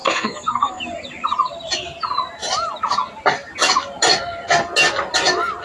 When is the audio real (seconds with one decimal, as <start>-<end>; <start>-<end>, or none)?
0.8-5.6